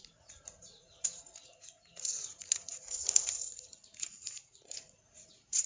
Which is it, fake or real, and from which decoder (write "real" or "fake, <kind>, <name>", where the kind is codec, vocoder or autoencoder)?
fake, vocoder, Vocos